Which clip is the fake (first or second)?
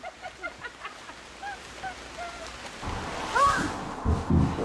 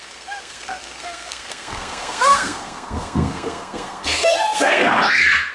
second